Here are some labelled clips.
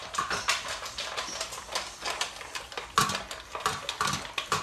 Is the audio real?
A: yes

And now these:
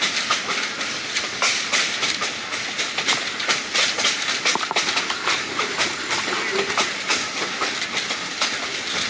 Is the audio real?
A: yes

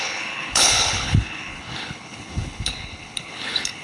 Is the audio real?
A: no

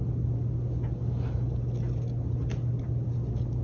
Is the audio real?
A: yes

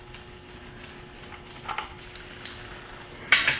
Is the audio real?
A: yes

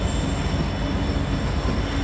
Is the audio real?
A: yes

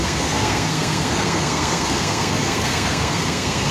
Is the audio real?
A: no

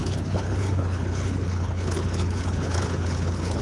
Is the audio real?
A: no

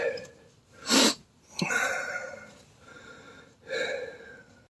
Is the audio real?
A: yes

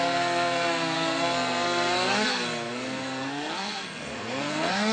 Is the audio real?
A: no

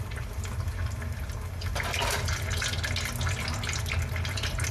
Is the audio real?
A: yes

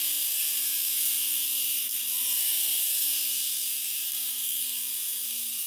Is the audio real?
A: no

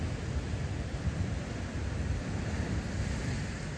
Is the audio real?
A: yes